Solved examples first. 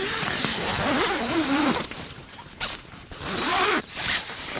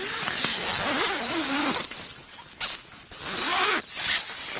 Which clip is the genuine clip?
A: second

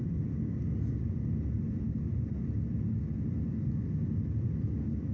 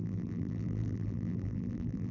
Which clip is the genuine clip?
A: first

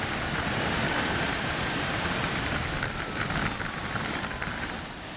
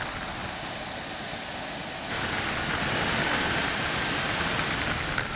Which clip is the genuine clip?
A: second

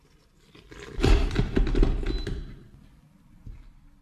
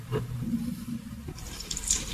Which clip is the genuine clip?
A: first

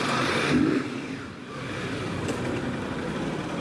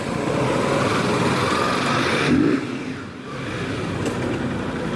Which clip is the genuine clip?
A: second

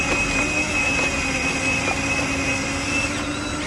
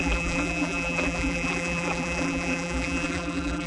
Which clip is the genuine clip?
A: first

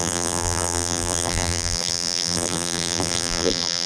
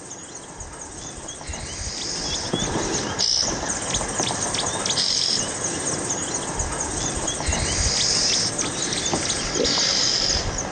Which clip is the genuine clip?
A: second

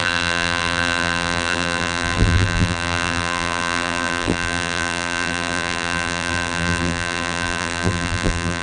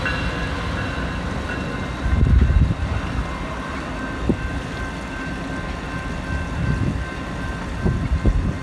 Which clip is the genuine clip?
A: second